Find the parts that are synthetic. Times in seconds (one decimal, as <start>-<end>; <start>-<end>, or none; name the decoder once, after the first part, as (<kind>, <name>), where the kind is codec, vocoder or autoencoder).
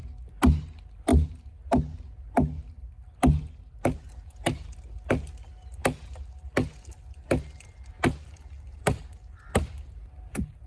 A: none